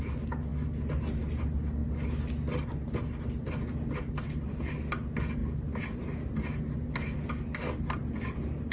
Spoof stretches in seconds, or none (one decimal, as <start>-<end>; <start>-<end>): none